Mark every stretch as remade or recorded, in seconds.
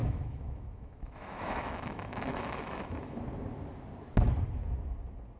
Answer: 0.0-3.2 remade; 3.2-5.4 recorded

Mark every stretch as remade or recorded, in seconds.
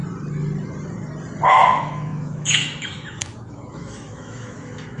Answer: 0.0-1.5 recorded; 1.5-5.0 remade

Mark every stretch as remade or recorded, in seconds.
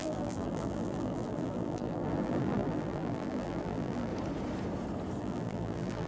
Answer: 0.0-4.1 remade; 4.1-5.2 recorded; 5.2-6.1 remade